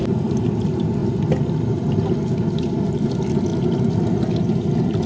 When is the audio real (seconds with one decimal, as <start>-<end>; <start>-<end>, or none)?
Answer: 0.0-5.1